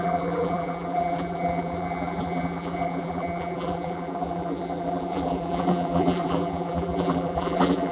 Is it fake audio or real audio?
fake